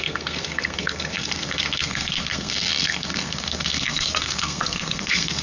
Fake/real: fake